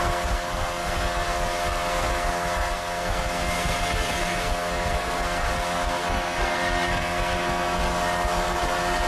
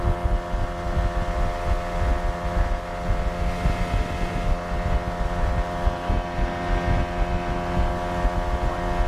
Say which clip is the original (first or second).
second